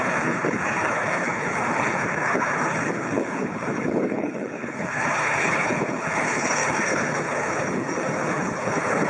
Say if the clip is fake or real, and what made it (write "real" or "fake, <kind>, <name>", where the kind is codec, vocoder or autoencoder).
fake, codec, HILCodec